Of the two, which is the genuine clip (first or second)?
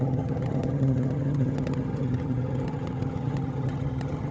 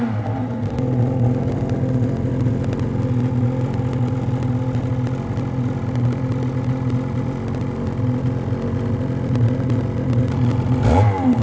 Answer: second